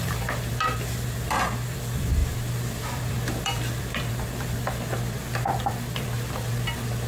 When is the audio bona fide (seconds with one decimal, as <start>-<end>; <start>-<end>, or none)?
0.0-7.1